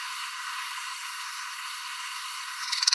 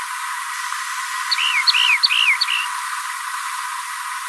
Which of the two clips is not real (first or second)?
first